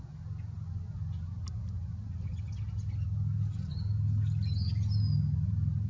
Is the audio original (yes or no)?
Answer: yes